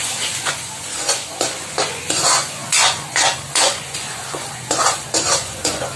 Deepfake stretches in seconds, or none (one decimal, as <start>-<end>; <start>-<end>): 0.0-6.0